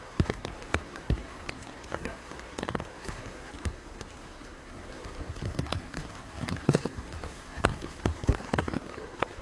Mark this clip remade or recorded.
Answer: remade